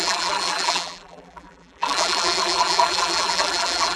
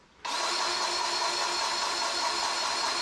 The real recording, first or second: second